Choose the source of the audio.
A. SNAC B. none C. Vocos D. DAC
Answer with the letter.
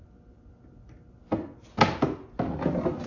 B